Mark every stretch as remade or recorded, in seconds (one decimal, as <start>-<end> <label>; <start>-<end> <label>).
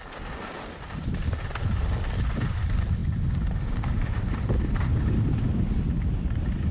0.0-6.7 remade